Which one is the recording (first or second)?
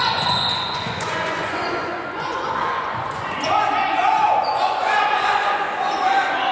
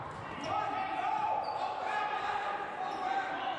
second